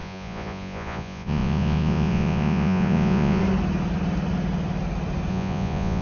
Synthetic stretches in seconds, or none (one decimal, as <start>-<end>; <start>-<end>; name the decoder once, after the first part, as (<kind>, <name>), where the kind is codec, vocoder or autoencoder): 0.0-3.4 (vocoder, Vocos); 5.3-6.0

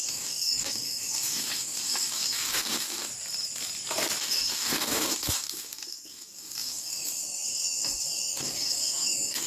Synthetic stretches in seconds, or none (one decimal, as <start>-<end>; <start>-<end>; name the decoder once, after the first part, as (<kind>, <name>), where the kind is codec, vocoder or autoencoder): 0.0-3.1 (codec, DAC); 4.2-9.5

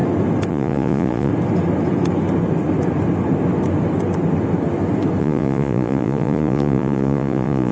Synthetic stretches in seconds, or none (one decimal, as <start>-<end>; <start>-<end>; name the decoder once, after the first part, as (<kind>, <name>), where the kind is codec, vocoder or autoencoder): 0.5-1.3 (vocoder, Vocos); 5.2-7.7

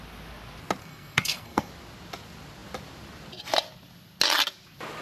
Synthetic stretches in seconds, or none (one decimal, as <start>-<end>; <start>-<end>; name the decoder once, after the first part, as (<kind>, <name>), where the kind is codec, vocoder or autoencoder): 0.8-1.7 (codec, SNAC)

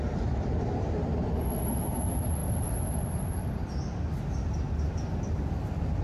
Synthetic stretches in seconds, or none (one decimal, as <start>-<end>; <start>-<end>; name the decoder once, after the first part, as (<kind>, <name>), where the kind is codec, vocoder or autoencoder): 2.4-3.7 (vocoder, BigVGAN v2)

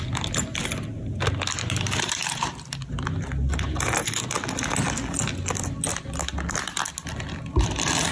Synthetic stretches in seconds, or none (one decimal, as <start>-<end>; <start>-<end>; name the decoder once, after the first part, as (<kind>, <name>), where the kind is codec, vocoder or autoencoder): 1.5-2.5 (vocoder, BigVGAN v2)

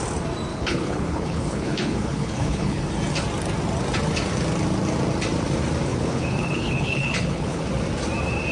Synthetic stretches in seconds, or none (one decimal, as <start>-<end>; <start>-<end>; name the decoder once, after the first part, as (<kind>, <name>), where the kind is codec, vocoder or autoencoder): 0.5-2.8 (codec, HILCodec); 5.9-7.6